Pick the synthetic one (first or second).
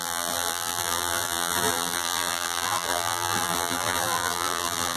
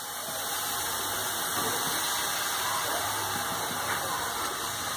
first